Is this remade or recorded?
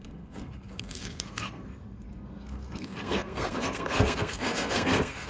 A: remade